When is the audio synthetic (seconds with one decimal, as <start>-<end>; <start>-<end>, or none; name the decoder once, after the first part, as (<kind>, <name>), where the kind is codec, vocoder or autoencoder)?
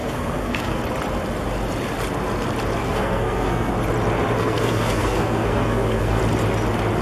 0.0-0.8 (codec, SNAC); 2.8-3.7; 4.4-6.2